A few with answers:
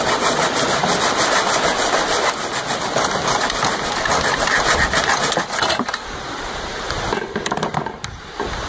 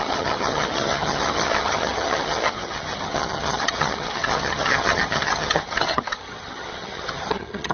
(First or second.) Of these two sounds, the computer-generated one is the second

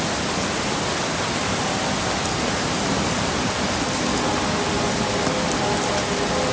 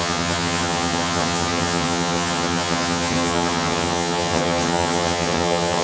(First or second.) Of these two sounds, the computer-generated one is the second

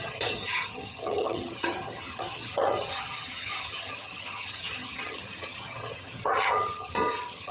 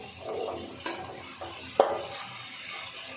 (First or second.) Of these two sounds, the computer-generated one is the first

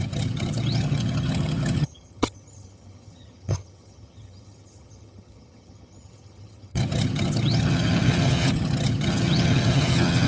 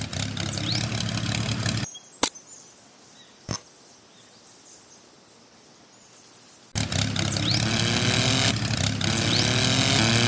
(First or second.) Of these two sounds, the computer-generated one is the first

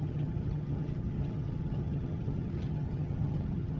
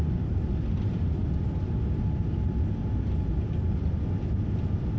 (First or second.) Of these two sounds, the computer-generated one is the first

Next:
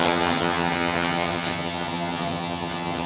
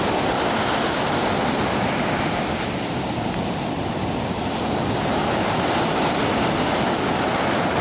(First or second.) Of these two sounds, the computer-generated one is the first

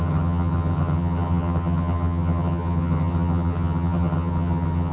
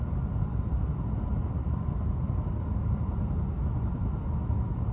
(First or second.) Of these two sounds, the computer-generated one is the first